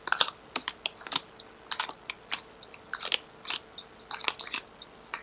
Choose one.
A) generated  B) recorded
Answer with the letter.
B